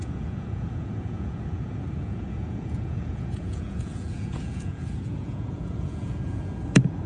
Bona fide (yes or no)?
no